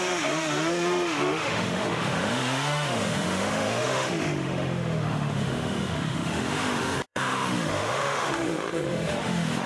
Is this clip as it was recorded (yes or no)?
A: no